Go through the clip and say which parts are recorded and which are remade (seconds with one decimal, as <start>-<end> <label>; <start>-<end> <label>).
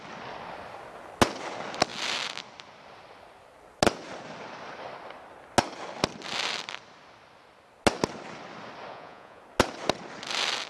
0.0-8.9 recorded; 8.9-9.4 remade; 9.4-10.7 recorded